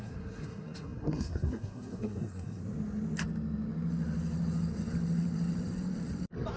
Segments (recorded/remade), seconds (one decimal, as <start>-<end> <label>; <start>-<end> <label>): 0.0-2.6 remade; 2.6-6.6 recorded